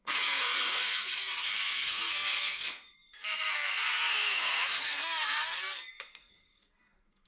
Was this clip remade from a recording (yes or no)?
yes